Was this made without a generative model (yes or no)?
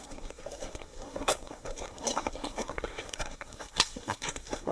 no